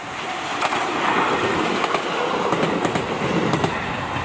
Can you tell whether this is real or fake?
real